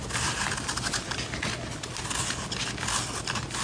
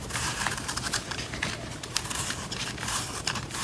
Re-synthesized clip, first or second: second